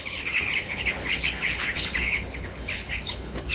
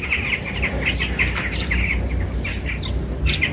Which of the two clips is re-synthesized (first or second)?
first